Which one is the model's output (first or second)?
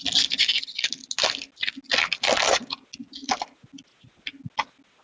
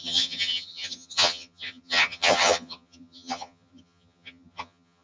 second